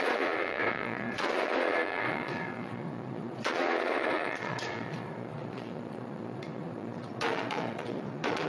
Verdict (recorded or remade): remade